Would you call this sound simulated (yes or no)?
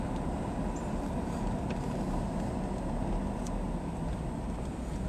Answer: no